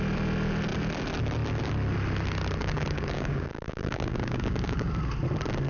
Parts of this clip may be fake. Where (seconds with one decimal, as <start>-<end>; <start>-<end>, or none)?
2.6-4.9